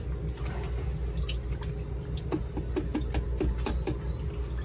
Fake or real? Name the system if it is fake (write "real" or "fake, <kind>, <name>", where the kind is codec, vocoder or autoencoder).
real